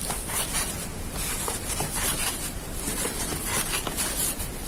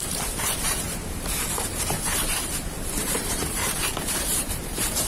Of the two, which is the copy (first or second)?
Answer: second